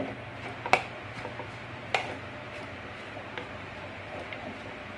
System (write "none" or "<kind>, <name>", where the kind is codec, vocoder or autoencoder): none